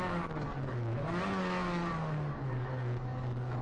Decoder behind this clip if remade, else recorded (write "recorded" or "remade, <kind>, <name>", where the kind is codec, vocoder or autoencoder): remade, codec, DAC